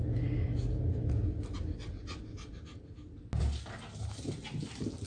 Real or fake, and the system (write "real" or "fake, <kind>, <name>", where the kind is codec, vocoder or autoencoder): real